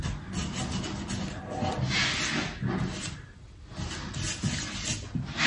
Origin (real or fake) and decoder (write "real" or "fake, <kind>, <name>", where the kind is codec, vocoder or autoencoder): real